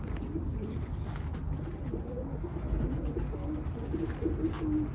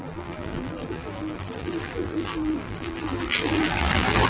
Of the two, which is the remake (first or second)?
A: second